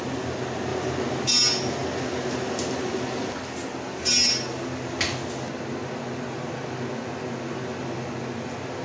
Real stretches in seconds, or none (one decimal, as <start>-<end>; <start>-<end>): 0.0-8.8